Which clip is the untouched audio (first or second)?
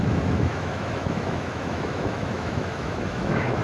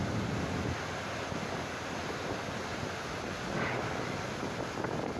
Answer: second